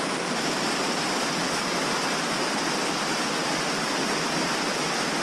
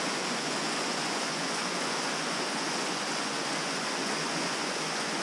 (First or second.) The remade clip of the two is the second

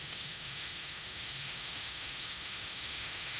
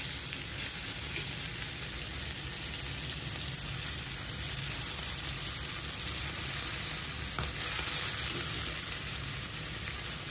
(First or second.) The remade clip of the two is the first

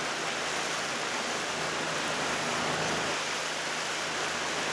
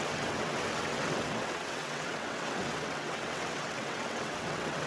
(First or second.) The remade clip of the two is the second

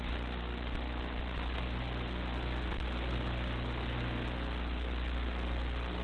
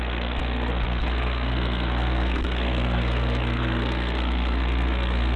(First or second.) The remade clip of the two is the second